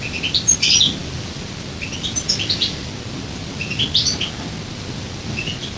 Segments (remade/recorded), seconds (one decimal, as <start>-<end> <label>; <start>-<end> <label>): 0.0-5.8 recorded